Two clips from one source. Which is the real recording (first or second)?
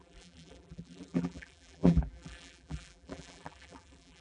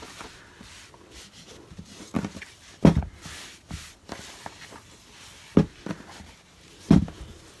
second